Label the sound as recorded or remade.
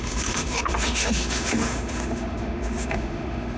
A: remade